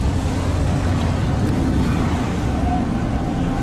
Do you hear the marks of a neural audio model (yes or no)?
no